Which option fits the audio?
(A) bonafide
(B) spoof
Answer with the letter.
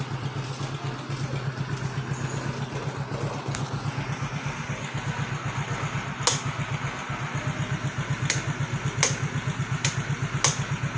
A